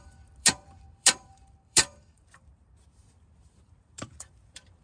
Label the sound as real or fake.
fake